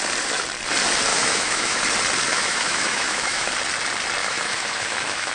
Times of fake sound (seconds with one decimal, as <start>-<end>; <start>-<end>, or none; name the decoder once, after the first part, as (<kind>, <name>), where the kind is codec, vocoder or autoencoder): 1.1-1.8 (autoencoder, DAC-VAE); 2.3-3.5; 4.2-5.3